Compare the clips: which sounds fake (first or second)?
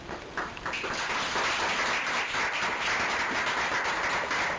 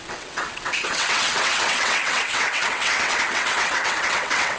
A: second